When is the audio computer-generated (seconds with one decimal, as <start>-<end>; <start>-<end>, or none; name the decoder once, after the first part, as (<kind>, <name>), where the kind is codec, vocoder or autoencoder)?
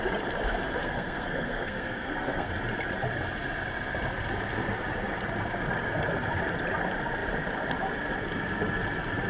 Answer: 0.8-2.5 (codec, SNAC)